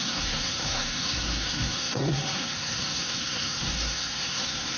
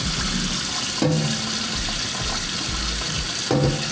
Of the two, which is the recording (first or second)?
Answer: second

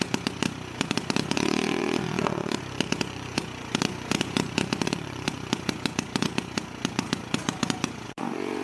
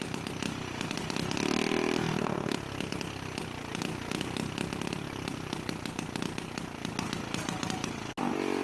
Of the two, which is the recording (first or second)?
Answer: second